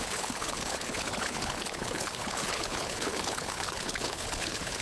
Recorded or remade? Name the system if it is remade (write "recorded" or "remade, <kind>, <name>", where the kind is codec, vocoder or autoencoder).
remade, codec, HILCodec